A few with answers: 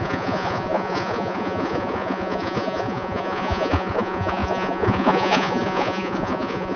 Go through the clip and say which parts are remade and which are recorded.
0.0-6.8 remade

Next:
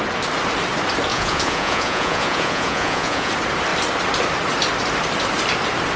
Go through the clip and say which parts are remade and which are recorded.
0.0-1.1 recorded; 1.1-3.3 remade; 3.3-6.0 recorded

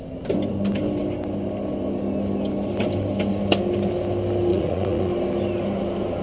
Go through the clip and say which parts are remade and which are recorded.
0.0-4.5 recorded; 4.5-5.1 remade; 5.1-6.2 recorded

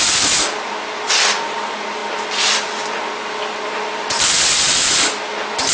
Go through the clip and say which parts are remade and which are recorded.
0.0-5.7 recorded

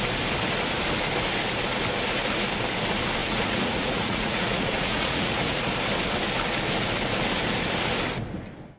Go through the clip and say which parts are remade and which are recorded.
0.0-3.2 recorded; 3.2-5.7 remade; 5.7-8.8 recorded

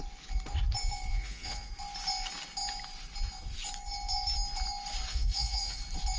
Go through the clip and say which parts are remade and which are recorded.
0.0-1.1 recorded; 1.1-1.7 remade; 1.7-5.1 recorded; 5.1-5.8 remade; 5.8-6.2 recorded

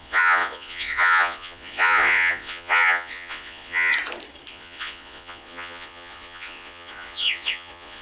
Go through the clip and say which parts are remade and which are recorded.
0.0-3.9 remade; 3.9-4.5 recorded; 4.5-8.0 remade

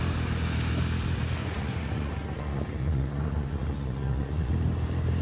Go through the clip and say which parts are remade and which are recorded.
0.0-1.4 recorded; 1.4-4.5 remade; 4.5-5.2 recorded